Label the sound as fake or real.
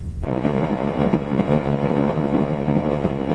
fake